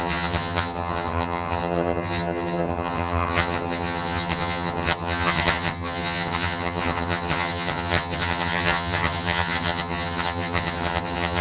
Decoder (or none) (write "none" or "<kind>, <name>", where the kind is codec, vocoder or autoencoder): vocoder, HiFi-GAN